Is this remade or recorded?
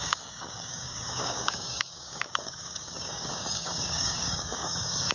remade